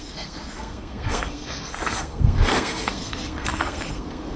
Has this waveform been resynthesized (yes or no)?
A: yes